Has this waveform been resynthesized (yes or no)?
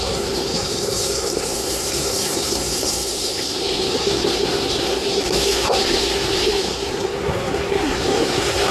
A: yes